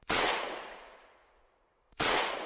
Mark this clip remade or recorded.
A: remade